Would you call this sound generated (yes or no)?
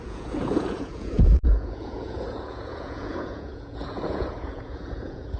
yes